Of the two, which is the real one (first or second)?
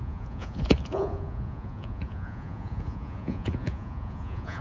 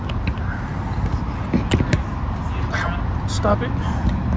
second